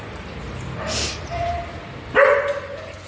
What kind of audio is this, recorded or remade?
recorded